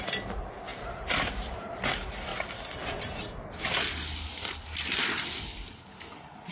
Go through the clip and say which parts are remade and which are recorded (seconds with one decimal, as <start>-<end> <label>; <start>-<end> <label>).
0.0-0.7 recorded; 0.7-1.3 remade; 1.3-6.5 recorded